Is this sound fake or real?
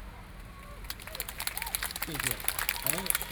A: real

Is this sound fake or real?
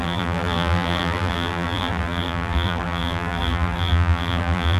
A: fake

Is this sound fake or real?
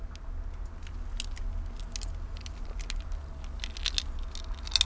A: real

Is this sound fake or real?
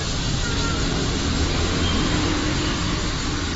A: real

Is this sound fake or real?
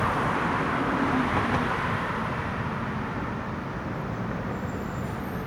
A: fake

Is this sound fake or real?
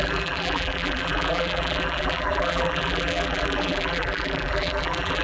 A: fake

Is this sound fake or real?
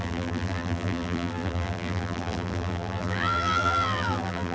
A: fake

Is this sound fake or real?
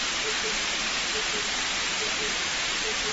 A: fake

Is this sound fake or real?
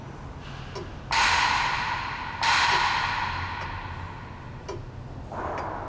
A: real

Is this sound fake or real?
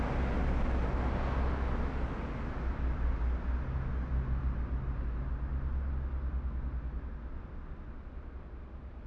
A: real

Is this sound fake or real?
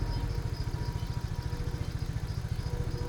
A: real